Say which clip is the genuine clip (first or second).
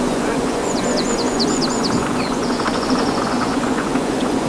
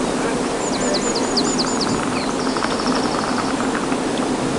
second